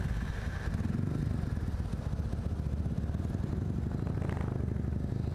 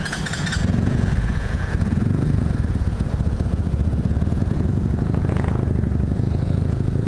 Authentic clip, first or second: first